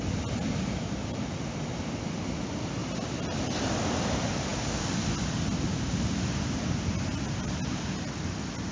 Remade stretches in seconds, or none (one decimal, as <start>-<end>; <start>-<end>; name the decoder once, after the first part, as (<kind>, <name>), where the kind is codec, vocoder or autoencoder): none